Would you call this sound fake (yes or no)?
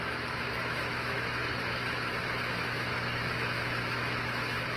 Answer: yes